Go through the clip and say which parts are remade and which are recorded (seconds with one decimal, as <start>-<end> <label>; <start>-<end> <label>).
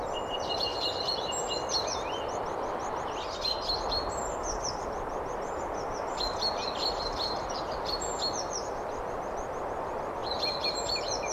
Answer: 0.0-0.7 remade; 0.7-3.0 recorded; 3.0-10.2 remade; 10.2-10.8 recorded; 10.8-11.3 remade